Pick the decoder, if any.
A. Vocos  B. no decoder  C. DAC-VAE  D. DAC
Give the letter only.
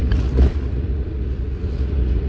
A